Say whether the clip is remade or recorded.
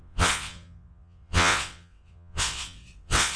remade